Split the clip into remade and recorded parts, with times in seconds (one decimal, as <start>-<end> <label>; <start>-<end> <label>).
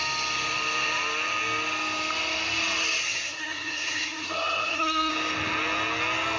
0.0-3.0 recorded; 3.0-5.1 remade; 5.1-6.4 recorded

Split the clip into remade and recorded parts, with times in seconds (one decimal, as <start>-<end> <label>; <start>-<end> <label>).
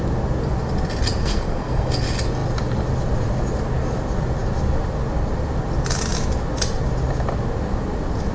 0.0-1.2 recorded; 1.2-1.9 remade; 1.9-8.3 recorded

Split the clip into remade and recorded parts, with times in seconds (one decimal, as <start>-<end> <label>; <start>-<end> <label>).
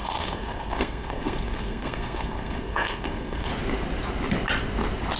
0.0-3.5 remade; 3.5-5.2 recorded